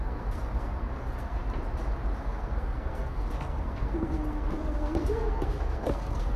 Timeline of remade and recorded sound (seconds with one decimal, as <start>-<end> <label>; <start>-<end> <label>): 0.0-1.4 remade; 1.4-2.2 recorded; 2.2-6.4 remade

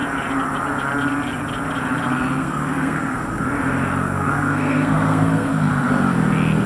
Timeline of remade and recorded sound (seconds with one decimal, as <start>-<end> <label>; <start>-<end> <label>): 0.0-2.4 recorded; 2.4-3.4 remade; 3.4-4.0 recorded; 4.0-5.7 remade; 5.7-6.7 recorded

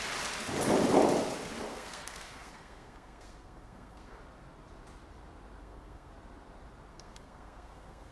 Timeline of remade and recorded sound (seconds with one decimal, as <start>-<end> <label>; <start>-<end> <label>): 0.0-1.7 recorded; 1.7-4.2 remade; 4.2-5.6 recorded; 5.6-6.1 remade; 6.1-6.9 recorded; 6.9-8.1 remade

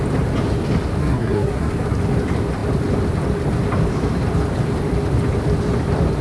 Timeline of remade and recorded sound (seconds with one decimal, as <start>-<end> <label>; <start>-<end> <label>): 0.0-1.0 recorded; 1.0-1.7 remade; 1.7-6.2 recorded

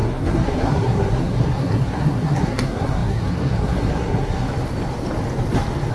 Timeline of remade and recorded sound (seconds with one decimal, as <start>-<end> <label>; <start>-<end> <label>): 0.0-4.5 remade; 4.5-5.9 recorded